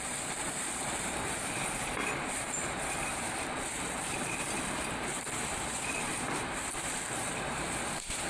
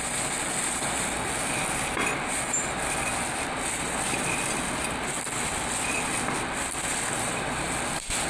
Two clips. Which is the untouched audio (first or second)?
second